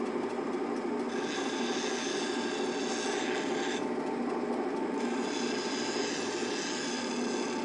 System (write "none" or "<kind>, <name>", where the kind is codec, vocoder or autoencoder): none